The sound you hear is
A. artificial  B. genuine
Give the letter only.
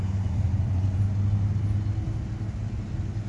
B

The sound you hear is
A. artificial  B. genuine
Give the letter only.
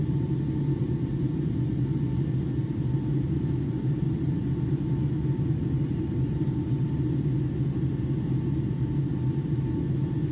B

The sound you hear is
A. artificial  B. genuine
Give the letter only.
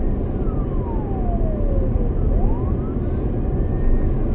B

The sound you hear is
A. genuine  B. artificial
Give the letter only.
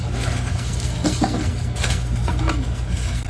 B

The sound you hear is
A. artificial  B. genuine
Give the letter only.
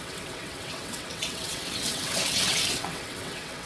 A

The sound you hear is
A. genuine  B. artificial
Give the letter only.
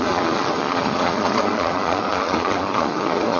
B